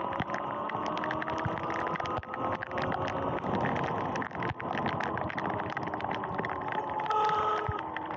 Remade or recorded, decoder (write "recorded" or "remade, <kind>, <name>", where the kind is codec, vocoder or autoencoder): recorded